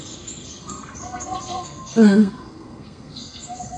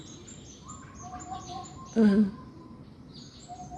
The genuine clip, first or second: second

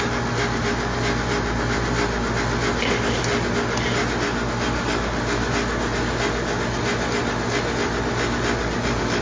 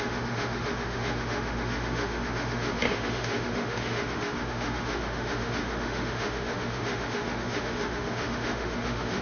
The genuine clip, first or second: first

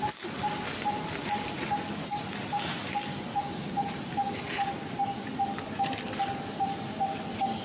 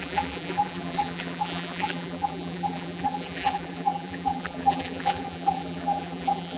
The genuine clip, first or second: first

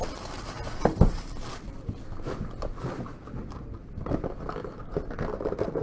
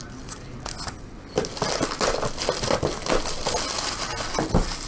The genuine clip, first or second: second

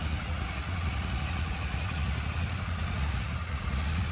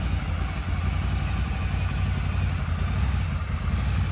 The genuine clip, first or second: second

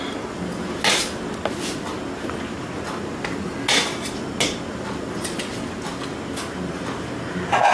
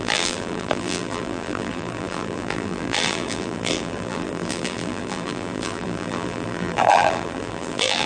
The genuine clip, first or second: first